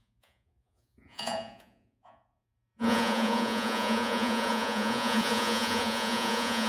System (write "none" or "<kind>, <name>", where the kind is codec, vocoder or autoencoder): vocoder, Vocos